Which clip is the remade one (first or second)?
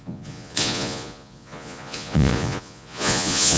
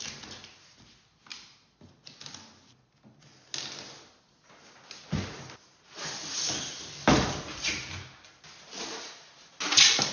first